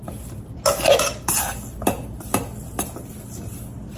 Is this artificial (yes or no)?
no